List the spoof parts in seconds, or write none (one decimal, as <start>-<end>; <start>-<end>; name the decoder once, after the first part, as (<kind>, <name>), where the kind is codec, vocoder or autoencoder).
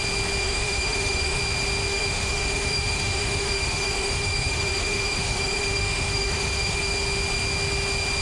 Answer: 0.4-1.4 (autoencoder, DAC-VAE); 1.9-6.8